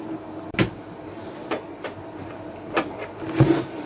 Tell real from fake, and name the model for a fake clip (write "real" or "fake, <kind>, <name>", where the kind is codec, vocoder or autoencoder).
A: real